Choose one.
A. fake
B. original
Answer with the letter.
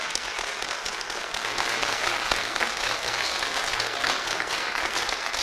A